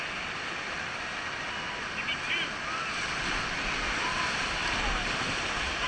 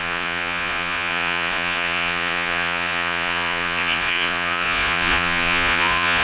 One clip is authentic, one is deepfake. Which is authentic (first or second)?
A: first